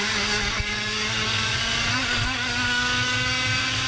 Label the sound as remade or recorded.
remade